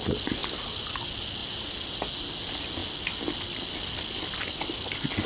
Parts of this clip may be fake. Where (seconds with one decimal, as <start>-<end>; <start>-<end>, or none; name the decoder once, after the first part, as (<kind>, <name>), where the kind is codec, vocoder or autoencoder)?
none